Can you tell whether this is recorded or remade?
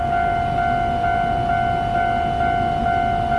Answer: recorded